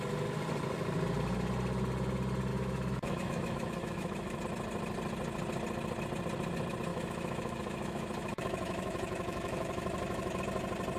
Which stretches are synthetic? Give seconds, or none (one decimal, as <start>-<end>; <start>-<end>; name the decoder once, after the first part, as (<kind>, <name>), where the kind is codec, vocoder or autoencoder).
2.5-4.4 (autoencoder, DAC-VAE); 6.9-10.4

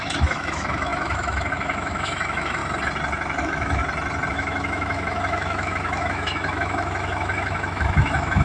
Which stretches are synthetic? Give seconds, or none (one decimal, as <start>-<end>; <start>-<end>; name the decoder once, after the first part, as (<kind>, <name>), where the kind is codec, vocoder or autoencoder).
0.0-2.6 (autoencoder, DAC-VAE); 3.4-3.8; 4.3-8.4

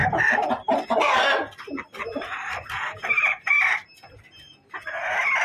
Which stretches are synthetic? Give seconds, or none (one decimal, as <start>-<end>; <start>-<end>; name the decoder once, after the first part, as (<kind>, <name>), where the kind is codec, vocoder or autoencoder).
0.0-0.9 (vocoder, BigVGAN v2); 1.9-3.5

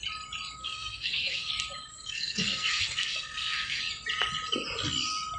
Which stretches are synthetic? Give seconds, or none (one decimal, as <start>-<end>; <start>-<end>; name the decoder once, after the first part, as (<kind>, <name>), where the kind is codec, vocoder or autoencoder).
0.6-1.5 (codec, SNAC); 1.9-3.8

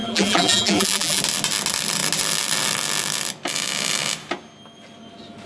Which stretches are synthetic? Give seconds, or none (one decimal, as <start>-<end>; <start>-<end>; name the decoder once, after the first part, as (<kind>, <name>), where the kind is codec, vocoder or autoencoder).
0.0-1.2 (vocoder, BigVGAN v2)

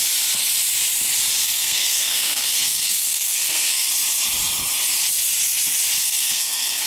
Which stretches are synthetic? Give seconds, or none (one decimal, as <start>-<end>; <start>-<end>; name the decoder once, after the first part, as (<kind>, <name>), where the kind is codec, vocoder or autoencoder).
1.4-3.9 (codec, SNAC); 6.0-6.9

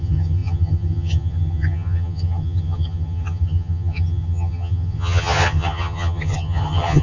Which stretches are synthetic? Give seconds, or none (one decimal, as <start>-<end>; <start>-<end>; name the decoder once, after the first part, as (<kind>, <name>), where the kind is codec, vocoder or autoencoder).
0.0-7.0 (vocoder, HiFi-GAN)

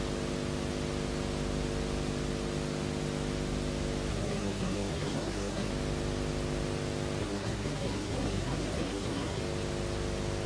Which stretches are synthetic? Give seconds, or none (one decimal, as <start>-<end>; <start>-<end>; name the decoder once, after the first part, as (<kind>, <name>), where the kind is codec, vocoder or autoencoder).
4.1-5.7 (codec, SNAC); 7.2-9.4